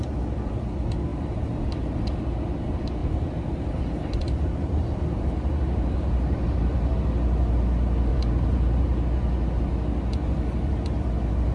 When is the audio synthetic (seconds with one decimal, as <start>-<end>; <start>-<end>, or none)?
3.0-6.9; 8.1-8.8